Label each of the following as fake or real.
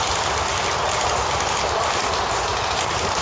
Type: real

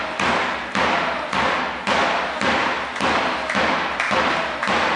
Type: real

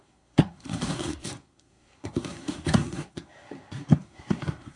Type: fake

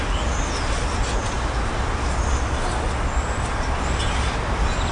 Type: real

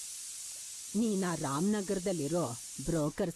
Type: real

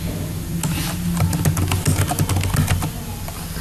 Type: real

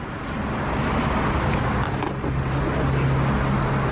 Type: real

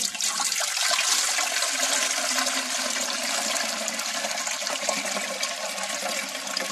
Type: real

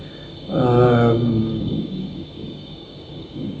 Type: fake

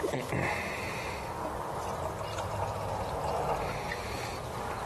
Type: real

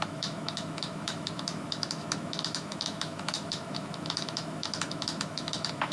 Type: fake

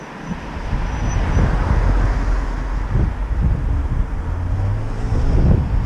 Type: real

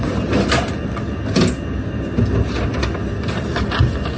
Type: real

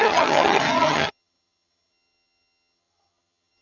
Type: fake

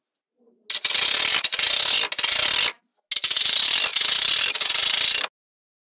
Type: real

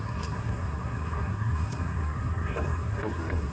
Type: fake